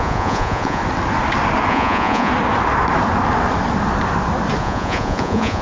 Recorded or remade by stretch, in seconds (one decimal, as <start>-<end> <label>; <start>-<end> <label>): 0.0-0.8 remade; 0.8-1.7 recorded; 1.7-2.3 remade; 2.3-4.6 recorded; 4.6-5.6 remade